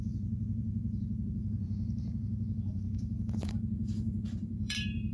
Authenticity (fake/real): fake